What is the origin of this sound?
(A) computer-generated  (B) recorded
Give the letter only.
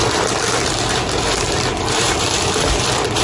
A